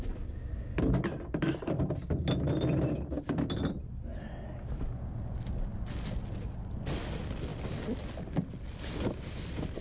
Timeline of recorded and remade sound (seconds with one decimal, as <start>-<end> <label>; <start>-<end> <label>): 0.0-9.8 recorded